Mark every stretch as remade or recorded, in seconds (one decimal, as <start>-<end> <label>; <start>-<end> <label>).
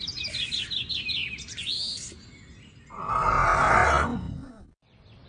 0.0-5.3 recorded